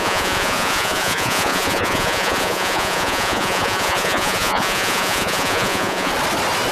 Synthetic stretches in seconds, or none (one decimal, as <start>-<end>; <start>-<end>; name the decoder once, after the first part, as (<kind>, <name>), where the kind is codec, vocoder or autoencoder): 0.0-6.1 (vocoder, Vocos)